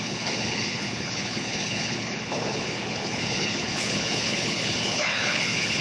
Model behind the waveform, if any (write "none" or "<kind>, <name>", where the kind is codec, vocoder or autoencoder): codec, HILCodec